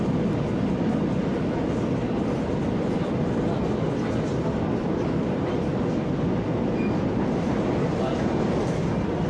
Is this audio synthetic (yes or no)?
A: no